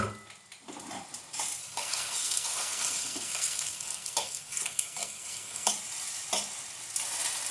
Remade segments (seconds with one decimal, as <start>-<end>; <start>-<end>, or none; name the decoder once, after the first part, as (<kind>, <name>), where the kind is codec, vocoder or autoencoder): 1.6-5.7 (codec, SNAC)